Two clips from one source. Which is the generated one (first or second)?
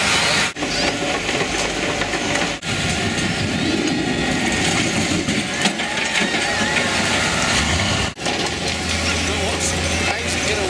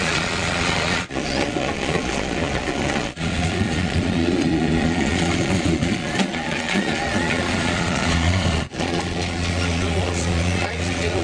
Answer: second